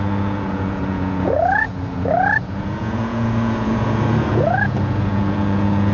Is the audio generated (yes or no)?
yes